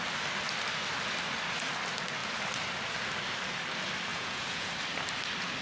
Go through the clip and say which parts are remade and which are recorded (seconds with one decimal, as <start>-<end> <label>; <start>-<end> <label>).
0.0-4.1 recorded; 4.1-4.7 remade; 4.7-5.6 recorded